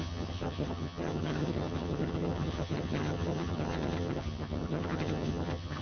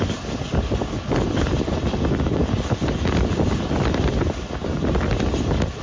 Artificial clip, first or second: first